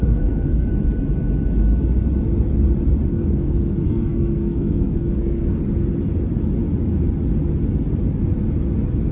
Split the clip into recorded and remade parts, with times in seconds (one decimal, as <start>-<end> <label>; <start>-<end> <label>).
0.0-0.7 remade; 0.7-3.1 recorded; 3.1-5.6 remade; 5.6-9.1 recorded